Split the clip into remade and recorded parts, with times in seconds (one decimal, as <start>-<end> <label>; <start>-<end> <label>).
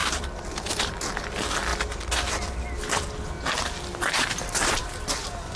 0.0-5.6 recorded